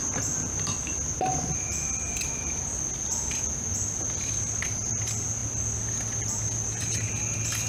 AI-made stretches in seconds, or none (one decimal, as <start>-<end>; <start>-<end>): none